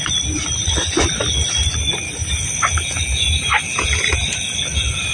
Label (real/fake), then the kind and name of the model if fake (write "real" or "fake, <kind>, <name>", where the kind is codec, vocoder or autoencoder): real